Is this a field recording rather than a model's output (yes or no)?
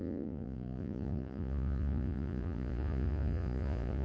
no